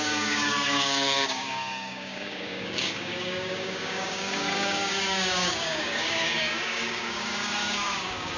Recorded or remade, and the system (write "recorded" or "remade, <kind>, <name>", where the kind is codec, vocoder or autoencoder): remade, codec, DAC